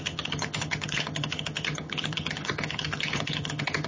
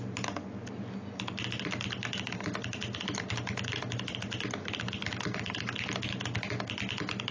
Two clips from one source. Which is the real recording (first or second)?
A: second